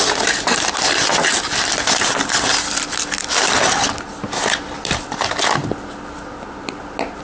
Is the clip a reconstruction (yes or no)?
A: no